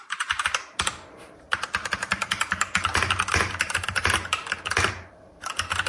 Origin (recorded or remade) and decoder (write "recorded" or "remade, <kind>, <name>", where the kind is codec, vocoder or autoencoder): remade, vocoder, BigVGAN v2